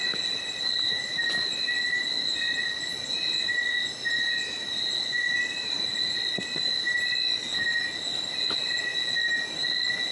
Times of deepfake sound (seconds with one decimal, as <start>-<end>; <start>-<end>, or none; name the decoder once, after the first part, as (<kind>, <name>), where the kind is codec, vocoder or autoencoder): none